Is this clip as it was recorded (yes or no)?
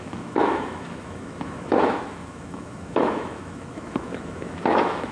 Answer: no